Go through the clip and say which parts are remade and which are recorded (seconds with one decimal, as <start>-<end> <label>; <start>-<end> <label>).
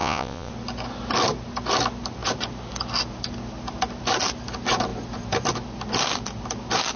0.0-0.5 remade; 0.5-7.0 recorded